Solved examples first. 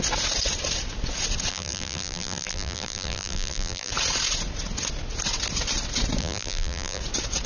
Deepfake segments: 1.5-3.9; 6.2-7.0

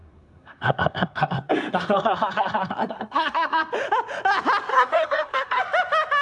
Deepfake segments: 0.0-3.6; 4.7-5.6

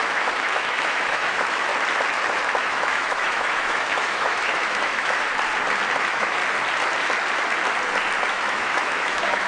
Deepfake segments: 0.0-1.7; 2.3-5.3; 6.0-6.4; 8.3-9.5

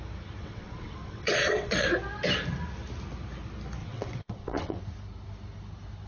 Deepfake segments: 0.4-1.9; 3.8-4.8

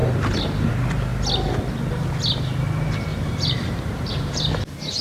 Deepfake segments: 3.1-4.5

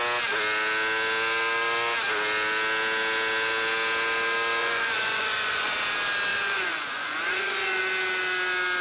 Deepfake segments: 4.6-5.7; 6.3-7.8

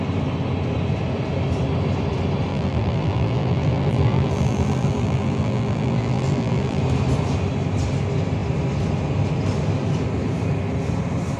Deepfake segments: 2.5-6.8